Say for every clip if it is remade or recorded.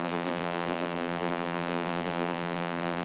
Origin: remade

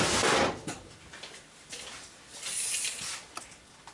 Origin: recorded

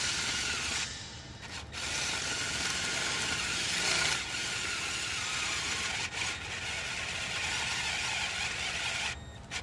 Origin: recorded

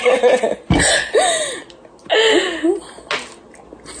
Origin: recorded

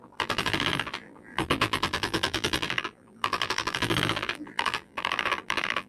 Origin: remade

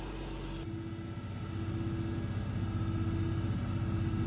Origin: recorded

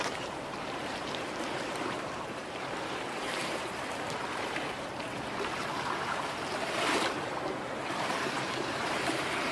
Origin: remade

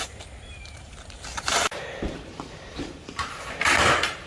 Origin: remade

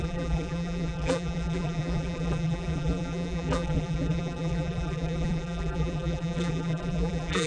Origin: remade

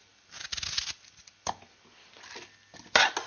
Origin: recorded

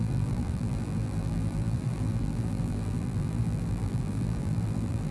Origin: remade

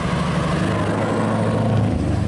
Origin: recorded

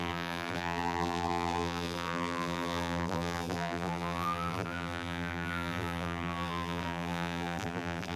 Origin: remade